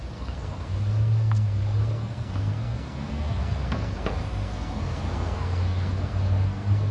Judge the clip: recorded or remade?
remade